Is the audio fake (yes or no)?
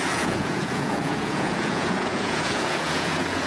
yes